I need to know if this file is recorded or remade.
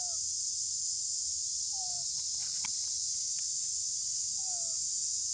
recorded